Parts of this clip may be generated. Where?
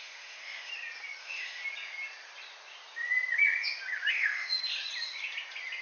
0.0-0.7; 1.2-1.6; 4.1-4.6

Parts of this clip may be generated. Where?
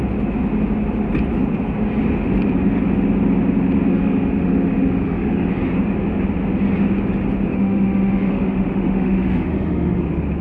3.9-5.5; 7.5-10.0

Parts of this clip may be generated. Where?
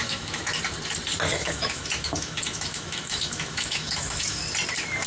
0.0-0.6; 1.3-4.4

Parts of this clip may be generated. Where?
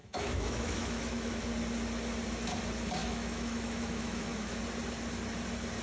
0.0-1.4; 3.0-4.6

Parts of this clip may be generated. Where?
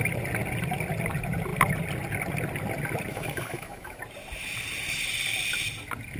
3.1-4.0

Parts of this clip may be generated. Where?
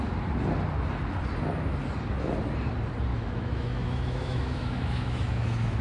3.1-5.8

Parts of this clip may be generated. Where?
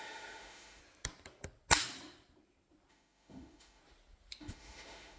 0.0-0.8; 2.9-3.8; 4.4-5.2